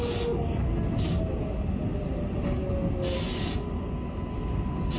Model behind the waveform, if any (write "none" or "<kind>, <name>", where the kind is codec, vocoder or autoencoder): none